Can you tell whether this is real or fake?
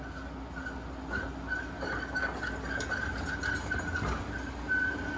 real